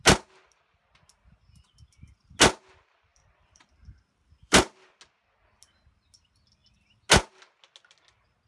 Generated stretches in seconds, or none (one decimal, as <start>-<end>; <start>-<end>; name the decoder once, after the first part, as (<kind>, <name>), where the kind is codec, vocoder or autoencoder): 3.1-4.9 (vocoder, BigVGAN v2)